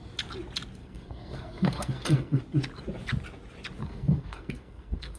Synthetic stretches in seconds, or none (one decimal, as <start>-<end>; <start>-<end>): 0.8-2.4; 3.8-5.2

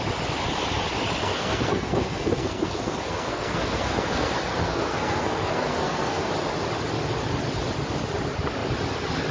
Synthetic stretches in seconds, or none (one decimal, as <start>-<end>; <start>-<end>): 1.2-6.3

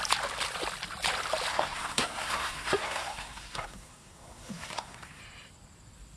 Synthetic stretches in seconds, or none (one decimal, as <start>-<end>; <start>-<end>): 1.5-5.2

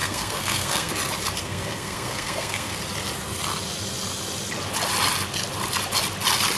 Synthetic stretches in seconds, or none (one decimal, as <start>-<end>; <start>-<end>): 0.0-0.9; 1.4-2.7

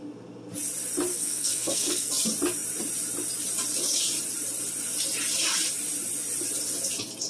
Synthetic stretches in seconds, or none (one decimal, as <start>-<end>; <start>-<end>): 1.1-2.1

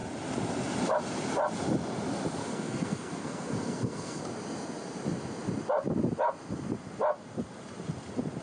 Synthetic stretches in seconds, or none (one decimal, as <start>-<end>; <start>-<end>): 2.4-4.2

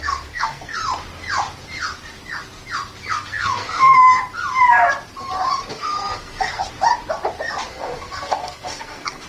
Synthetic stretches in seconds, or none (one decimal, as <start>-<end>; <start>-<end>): 0.0-0.8; 3.1-4.2; 5.7-6.6; 7.7-9.3